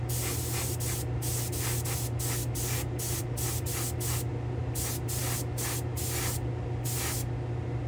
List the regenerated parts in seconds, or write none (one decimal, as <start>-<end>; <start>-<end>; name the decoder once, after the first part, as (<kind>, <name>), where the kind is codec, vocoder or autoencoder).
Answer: none